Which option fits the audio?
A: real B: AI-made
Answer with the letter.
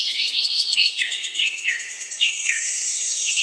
B